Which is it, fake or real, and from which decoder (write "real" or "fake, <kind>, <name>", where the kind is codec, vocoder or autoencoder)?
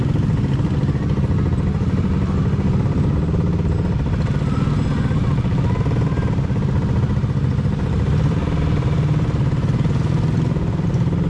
real